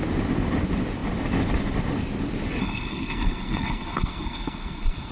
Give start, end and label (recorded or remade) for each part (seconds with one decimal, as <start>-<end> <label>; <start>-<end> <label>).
0.0-2.6 recorded; 2.6-5.1 remade